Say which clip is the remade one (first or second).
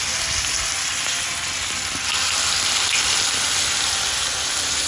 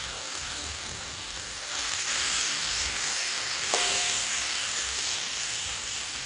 second